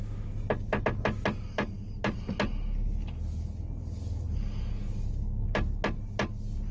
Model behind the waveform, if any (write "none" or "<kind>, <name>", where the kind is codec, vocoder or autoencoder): none